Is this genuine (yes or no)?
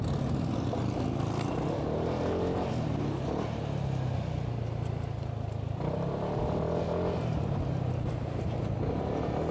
yes